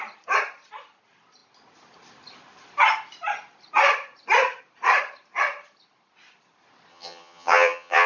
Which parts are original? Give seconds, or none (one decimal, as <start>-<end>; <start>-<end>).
0.0-6.9